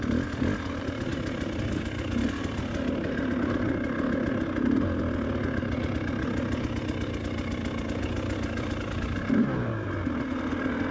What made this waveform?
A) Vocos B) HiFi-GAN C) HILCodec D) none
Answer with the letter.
D